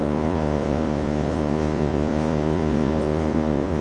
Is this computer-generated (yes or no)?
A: yes